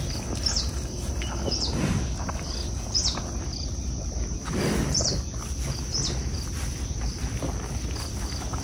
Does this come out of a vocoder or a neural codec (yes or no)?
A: no